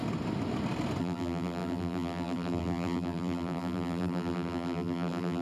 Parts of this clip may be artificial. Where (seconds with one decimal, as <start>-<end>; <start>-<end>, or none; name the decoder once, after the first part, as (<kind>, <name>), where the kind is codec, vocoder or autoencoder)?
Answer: 1.0-5.4 (vocoder, BigVGAN v2)